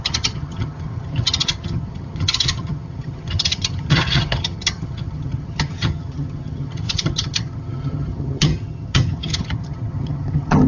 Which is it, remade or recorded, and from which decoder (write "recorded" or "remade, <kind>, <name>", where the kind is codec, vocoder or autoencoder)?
remade, vocoder, HiFi-GAN